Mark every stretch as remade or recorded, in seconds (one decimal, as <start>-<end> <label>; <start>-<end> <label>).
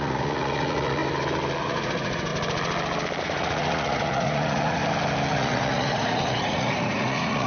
0.0-1.0 remade; 1.0-1.6 recorded; 1.6-2.3 remade; 2.3-3.2 recorded; 3.2-4.8 remade; 4.8-5.3 recorded; 5.3-7.5 remade